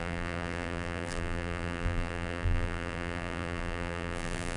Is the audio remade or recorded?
remade